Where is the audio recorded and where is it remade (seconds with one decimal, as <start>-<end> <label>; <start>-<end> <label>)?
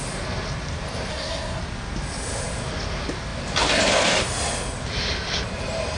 0.0-1.1 recorded; 1.1-1.6 remade; 1.6-6.0 recorded